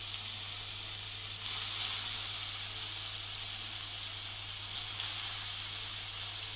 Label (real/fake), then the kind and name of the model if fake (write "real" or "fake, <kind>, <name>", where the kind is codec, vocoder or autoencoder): real